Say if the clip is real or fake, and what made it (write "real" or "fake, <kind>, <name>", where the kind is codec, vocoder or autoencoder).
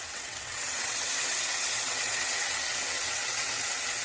fake, vocoder, WaveNeXt